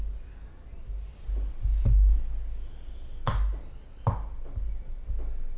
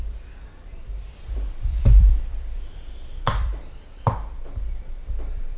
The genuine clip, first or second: first